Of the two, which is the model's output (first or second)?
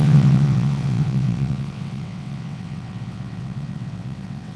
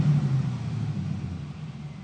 first